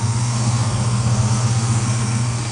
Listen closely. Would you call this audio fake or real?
fake